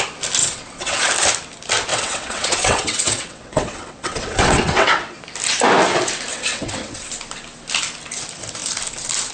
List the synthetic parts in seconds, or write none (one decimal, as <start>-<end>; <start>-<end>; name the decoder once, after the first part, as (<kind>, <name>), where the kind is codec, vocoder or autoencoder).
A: 0.4-1.1 (vocoder, WaveNeXt); 1.9-5.2; 6.3-7.1